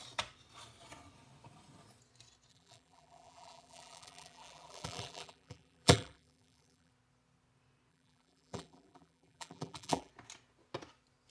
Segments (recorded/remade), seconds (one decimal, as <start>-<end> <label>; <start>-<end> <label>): 0.0-2.5 recorded; 2.5-6.9 remade; 6.9-7.9 recorded; 7.9-10.1 remade; 10.1-11.3 recorded